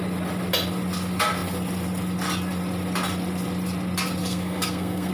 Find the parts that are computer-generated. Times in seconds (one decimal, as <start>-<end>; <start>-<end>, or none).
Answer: 4.2-5.1